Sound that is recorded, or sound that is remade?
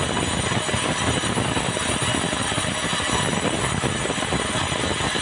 recorded